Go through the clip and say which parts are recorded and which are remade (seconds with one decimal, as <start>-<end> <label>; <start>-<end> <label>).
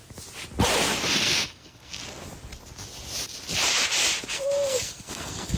0.0-1.2 recorded; 1.2-2.0 remade; 2.0-4.3 recorded; 4.3-5.6 remade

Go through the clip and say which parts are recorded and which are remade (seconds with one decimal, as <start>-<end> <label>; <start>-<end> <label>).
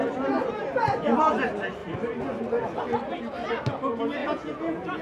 0.0-4.2 recorded; 4.2-5.0 remade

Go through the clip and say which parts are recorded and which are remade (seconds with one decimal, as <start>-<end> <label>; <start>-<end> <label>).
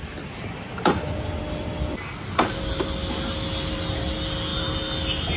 0.0-5.4 recorded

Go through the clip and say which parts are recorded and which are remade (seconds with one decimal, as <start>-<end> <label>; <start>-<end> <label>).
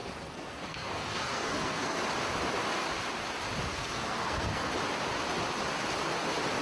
0.0-2.0 remade; 2.0-3.7 recorded; 3.7-4.7 remade; 4.7-6.6 recorded